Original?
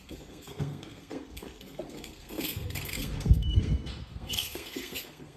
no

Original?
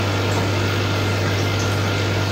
yes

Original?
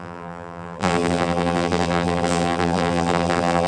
no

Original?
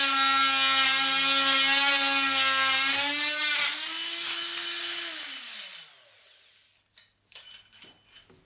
yes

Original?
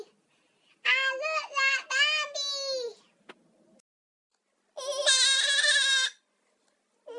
yes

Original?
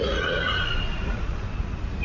no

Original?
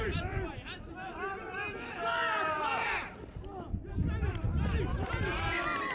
no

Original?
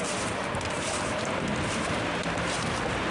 no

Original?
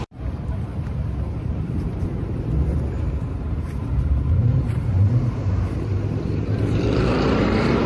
no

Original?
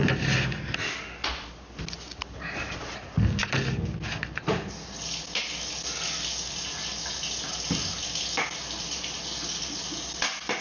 yes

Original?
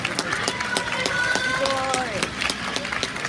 yes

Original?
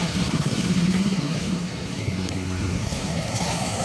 no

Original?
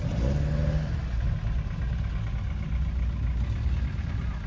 yes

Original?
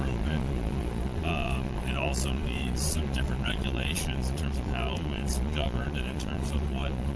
no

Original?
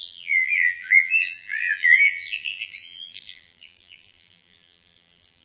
no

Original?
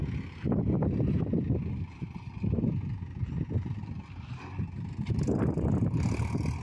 yes